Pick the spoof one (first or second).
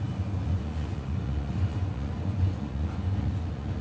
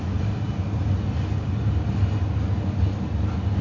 first